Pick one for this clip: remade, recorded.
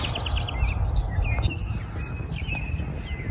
recorded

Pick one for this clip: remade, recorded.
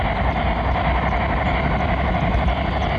recorded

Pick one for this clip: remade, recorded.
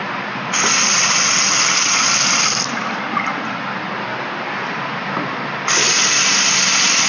recorded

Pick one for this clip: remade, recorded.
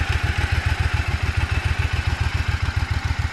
recorded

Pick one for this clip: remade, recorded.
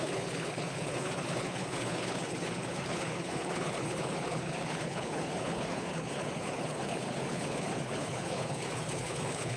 remade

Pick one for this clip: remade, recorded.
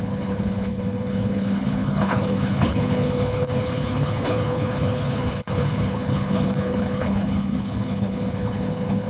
remade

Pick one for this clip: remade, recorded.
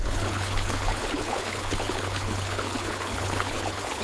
remade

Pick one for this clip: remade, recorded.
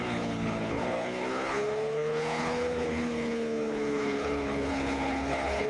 remade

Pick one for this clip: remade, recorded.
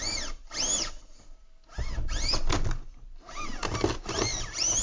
recorded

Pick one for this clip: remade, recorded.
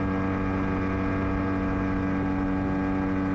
recorded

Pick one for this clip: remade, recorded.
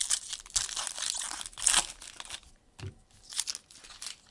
recorded